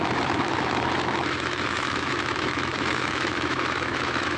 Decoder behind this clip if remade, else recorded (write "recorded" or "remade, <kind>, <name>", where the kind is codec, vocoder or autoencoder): remade, autoencoder, DAC-VAE